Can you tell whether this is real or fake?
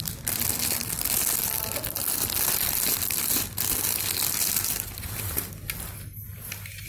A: real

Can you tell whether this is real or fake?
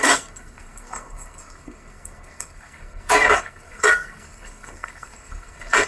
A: fake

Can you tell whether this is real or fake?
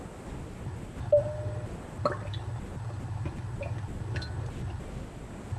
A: real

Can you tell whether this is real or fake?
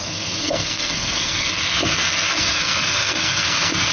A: fake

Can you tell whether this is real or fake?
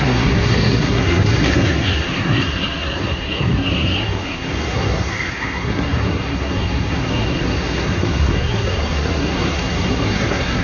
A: fake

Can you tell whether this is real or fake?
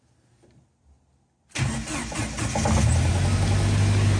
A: real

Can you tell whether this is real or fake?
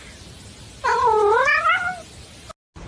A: real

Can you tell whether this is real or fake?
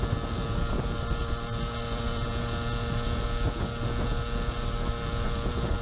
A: real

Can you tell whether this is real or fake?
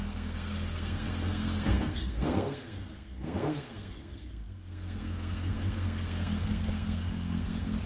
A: fake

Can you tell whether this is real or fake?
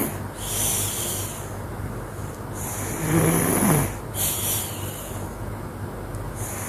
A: real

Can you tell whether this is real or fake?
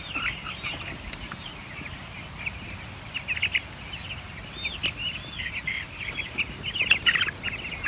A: real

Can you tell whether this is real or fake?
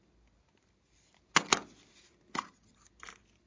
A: real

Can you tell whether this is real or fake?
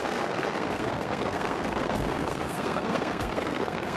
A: fake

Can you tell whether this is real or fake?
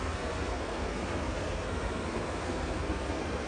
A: fake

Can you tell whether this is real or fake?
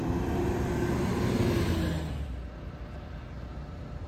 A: real